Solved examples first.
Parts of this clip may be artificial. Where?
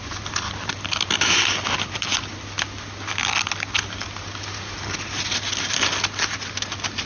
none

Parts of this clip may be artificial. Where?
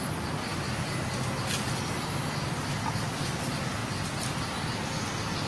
none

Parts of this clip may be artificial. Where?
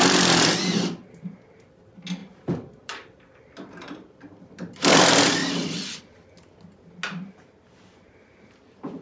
2.2-5.0 (vocoder, BigVGAN v2); 5.4-6.0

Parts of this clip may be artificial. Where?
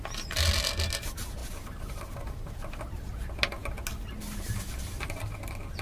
none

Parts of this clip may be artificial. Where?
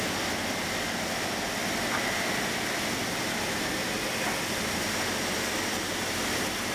1.6-3.4 (vocoder, BigVGAN v2)